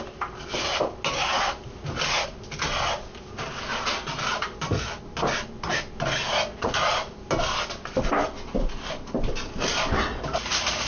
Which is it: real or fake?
real